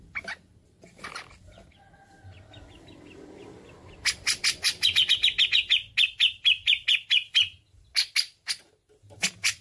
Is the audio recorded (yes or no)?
yes